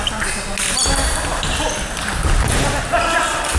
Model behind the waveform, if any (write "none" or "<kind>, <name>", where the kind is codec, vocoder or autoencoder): none